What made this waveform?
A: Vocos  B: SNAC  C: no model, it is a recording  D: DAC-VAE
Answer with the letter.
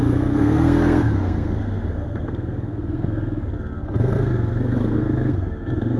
B